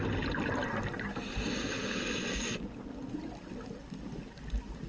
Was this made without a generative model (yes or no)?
yes